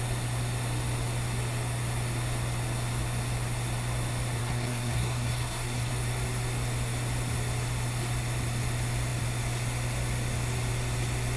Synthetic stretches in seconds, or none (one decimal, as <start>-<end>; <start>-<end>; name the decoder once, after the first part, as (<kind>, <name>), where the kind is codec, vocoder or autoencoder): 4.4-5.9 (codec, SNAC)